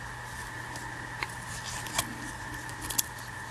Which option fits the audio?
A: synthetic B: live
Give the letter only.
B